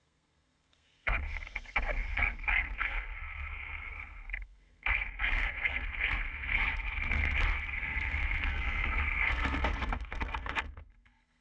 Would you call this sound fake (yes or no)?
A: yes